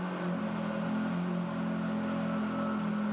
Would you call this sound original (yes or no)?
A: yes